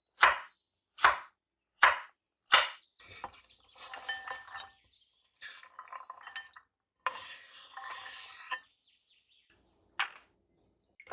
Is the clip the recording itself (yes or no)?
yes